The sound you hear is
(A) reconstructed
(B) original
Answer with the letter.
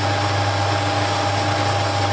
B